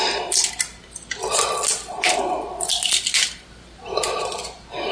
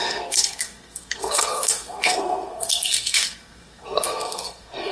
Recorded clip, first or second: first